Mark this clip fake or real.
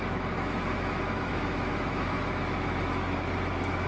fake